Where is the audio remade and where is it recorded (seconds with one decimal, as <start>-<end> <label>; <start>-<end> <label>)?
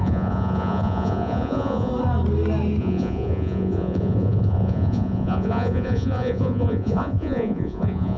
0.0-1.9 remade; 1.9-2.8 recorded; 2.8-8.2 remade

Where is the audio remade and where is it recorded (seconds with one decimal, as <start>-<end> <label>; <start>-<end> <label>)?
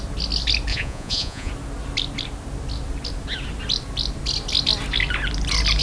0.0-0.7 recorded; 0.7-1.5 remade; 1.5-5.8 recorded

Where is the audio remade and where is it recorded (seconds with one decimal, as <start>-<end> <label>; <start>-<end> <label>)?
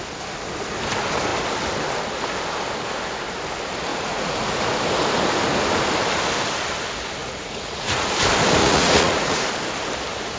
0.0-3.9 recorded; 3.9-4.6 remade; 4.6-7.2 recorded; 7.2-8.1 remade; 8.1-8.6 recorded; 8.6-9.5 remade; 9.5-10.4 recorded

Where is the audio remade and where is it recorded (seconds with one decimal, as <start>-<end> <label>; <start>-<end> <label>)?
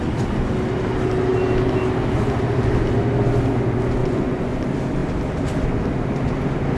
0.0-4.0 recorded; 4.0-4.6 remade; 4.6-6.8 recorded